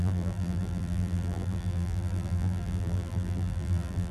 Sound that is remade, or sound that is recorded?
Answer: remade